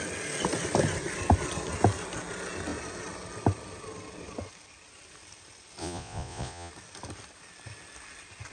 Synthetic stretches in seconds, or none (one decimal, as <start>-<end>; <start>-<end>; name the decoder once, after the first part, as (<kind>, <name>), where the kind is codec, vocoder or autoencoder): 5.8-6.7 (vocoder, Vocos)

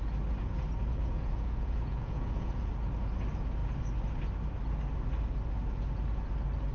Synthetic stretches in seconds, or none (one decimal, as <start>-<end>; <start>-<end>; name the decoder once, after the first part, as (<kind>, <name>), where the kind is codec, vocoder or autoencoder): 0.9-2.7 (vocoder, Vocos)

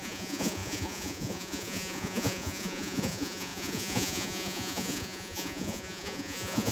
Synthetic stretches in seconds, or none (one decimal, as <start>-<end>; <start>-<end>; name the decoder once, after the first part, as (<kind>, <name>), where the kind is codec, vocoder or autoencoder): 0.0-6.7 (vocoder, Vocos)

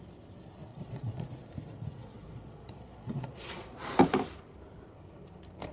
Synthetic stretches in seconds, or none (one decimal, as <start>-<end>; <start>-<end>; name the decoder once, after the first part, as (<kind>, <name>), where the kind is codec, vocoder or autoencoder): 0.7-1.5 (vocoder, Vocos); 2.0-4.0

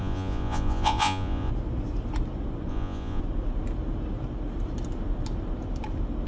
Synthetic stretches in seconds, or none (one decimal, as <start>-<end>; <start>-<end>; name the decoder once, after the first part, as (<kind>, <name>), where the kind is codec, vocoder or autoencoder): 0.0-1.5 (vocoder, Vocos); 2.7-3.2

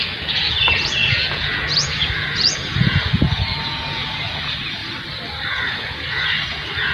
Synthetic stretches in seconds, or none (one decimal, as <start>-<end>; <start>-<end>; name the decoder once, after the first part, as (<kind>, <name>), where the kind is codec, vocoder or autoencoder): 0.0-4.8 (vocoder, Vocos); 5.5-6.9